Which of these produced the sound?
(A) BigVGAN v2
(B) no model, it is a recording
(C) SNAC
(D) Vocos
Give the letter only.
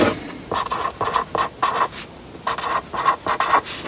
B